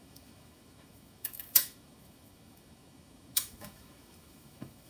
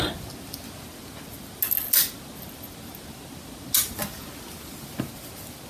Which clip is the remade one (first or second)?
first